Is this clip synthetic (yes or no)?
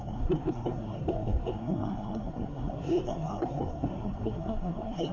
yes